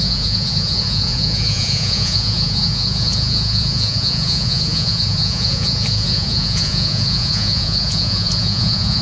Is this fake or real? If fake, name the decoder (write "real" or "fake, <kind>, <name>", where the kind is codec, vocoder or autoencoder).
fake, vocoder, Vocos